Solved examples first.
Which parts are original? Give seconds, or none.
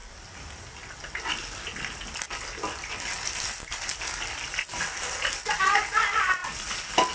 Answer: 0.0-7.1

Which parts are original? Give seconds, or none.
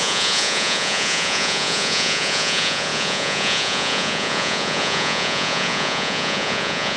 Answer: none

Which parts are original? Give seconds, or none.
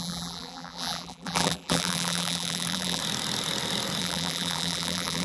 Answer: 3.0-4.0